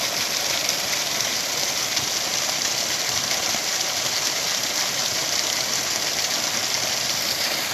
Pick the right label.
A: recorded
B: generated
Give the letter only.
A